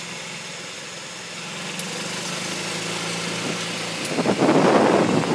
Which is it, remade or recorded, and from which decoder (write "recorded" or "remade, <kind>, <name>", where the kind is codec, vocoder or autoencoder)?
recorded